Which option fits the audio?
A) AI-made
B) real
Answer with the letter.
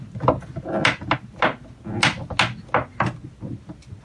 B